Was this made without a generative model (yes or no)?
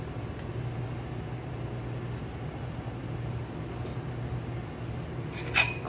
yes